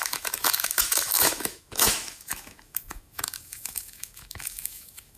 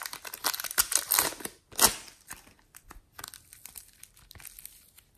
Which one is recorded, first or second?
second